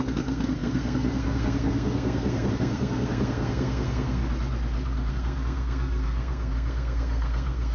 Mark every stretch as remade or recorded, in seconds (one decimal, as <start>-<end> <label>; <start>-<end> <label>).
0.0-4.2 remade; 4.2-5.1 recorded; 5.1-7.7 remade